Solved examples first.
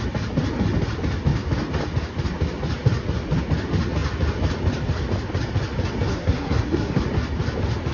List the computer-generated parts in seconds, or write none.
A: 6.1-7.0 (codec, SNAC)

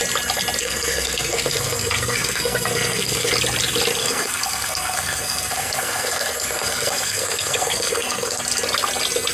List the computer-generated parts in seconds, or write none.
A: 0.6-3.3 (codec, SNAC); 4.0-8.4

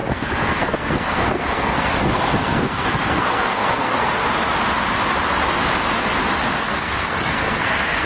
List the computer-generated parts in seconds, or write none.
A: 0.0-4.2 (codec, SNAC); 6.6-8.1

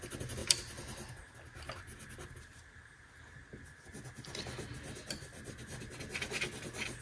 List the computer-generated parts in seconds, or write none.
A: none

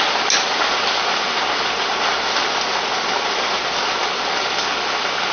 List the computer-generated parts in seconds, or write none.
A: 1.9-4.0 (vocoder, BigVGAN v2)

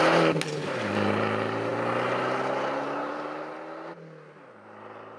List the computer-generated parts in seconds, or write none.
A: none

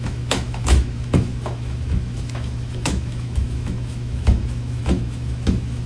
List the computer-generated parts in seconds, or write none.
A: 0.0-5.9 (autoencoder, DAC-VAE)

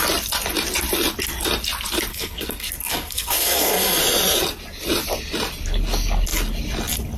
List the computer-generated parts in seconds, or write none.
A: 2.1-4.0 (codec, SNAC)